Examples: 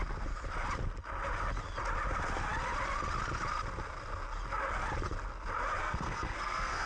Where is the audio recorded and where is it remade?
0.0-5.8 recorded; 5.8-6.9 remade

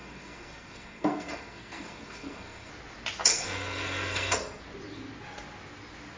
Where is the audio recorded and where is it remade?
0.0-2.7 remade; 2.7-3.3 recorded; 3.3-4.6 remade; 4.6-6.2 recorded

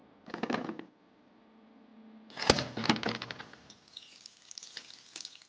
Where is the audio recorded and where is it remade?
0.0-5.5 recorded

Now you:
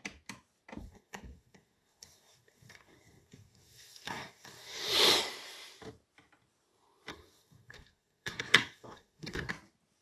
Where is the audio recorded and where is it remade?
0.0-0.8 recorded; 0.8-4.8 remade; 4.8-7.1 recorded; 7.1-9.5 remade; 9.5-10.0 recorded

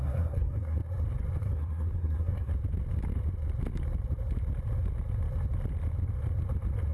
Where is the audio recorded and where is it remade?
0.0-0.8 remade; 0.8-1.4 recorded; 1.4-2.5 remade; 2.5-6.9 recorded

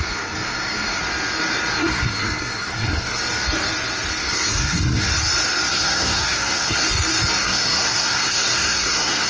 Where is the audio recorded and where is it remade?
0.0-1.0 remade; 1.0-1.8 recorded; 1.8-3.2 remade; 3.2-4.2 recorded; 4.2-5.1 remade; 5.1-5.7 recorded; 5.7-6.8 remade; 6.8-7.4 recorded; 7.4-9.3 remade